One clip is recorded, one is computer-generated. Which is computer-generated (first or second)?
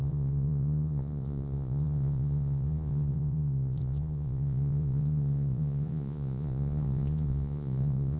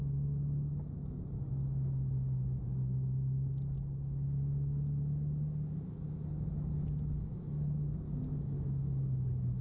first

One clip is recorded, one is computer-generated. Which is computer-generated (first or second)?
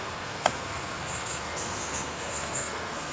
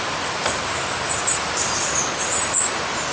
first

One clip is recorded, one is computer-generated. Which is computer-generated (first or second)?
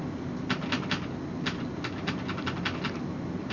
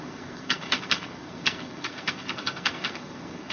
second